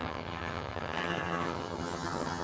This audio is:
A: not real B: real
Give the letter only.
A